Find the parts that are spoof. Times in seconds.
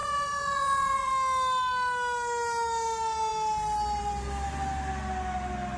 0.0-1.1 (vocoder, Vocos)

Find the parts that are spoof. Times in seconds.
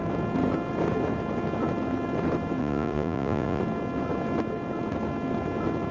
2.6-3.6 (vocoder, Vocos)